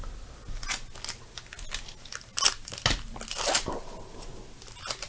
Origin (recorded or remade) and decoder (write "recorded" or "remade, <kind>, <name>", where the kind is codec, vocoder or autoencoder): recorded